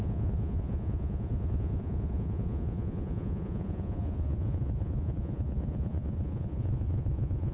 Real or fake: fake